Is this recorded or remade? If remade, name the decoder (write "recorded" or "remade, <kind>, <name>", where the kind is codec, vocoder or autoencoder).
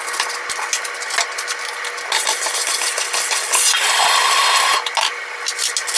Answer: recorded